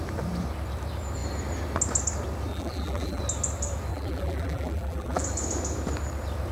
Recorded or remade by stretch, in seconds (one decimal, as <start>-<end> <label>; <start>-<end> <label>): 0.0-2.5 recorded; 2.5-3.2 remade; 3.2-3.9 recorded; 3.9-5.2 remade; 5.2-6.5 recorded